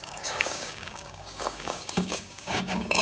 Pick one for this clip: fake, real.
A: fake